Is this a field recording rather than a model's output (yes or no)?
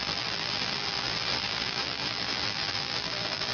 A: no